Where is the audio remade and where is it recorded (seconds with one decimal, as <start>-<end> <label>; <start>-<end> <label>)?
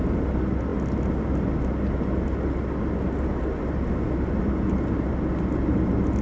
0.0-6.2 recorded